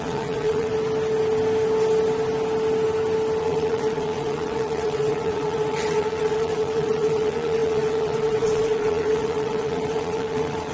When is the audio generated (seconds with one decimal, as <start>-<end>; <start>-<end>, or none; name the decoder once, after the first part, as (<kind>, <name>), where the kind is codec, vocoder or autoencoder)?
0.0-0.7 (vocoder, WaveNeXt); 3.4-10.7